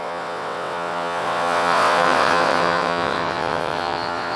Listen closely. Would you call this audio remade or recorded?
remade